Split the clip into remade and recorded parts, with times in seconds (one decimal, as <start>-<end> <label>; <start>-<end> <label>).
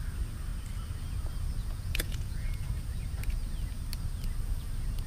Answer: 0.0-1.6 recorded; 1.6-2.6 remade; 2.6-5.1 recorded